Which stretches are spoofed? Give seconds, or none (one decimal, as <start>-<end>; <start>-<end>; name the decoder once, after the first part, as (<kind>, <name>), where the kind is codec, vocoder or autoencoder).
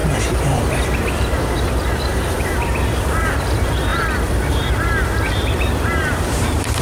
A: 0.0-3.9 (vocoder, BigVGAN v2); 4.5-6.8